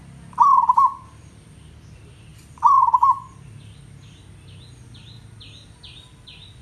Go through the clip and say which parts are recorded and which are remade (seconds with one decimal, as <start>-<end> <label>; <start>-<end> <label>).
0.0-6.6 recorded